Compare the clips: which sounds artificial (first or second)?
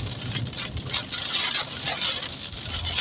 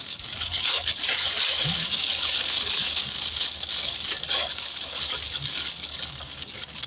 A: second